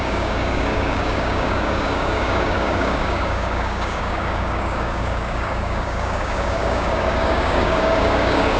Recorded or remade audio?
remade